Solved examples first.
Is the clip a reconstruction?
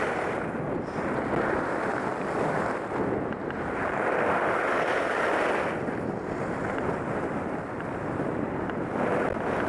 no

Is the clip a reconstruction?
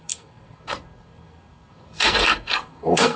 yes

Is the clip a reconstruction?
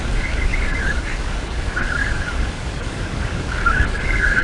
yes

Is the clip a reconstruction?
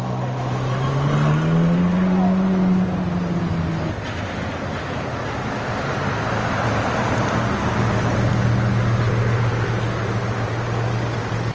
no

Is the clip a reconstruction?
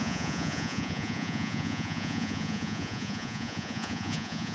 yes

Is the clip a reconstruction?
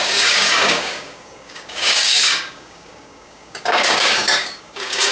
yes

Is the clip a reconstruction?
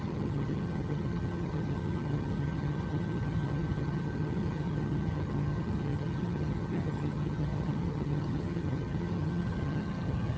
yes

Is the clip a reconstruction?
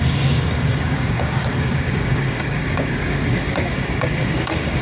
yes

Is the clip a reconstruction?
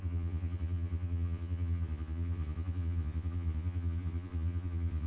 yes